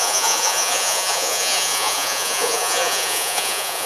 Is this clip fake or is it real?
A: fake